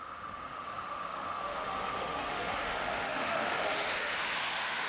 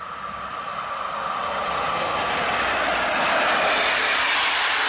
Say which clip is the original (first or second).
second